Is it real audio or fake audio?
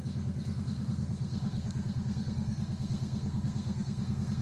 fake